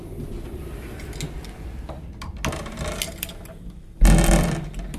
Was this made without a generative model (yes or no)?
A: yes